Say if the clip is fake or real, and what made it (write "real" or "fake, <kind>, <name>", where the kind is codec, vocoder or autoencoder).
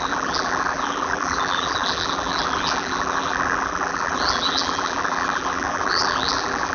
fake, vocoder, BigVGAN v2